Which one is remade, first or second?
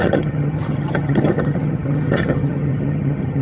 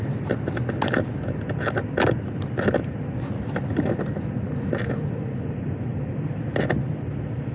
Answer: first